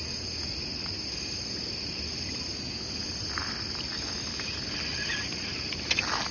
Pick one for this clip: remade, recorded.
recorded